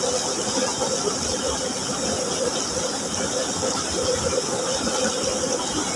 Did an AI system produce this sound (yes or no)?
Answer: no